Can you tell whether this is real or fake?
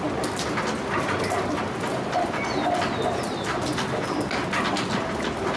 real